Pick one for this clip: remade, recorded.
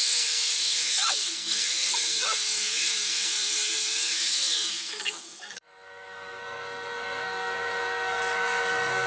remade